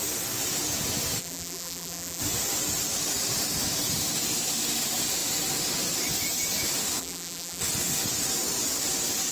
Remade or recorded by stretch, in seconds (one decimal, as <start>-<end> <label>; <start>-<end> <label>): 0.0-1.2 recorded; 1.2-2.2 remade; 2.2-7.0 recorded; 7.0-7.6 remade; 7.6-9.3 recorded